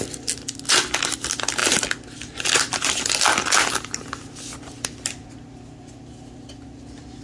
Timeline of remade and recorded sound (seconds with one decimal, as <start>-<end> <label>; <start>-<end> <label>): 0.0-7.2 recorded